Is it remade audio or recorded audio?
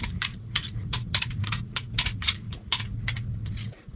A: remade